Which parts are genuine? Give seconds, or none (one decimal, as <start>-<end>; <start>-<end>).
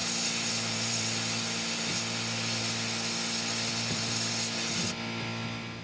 1.9-3.7; 4.3-5.8